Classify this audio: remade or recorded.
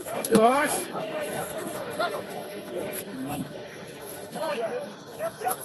remade